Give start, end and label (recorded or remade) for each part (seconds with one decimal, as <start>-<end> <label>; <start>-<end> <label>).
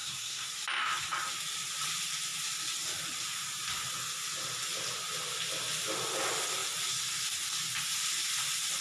0.0-0.5 remade; 0.5-8.8 recorded